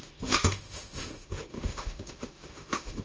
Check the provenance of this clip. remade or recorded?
remade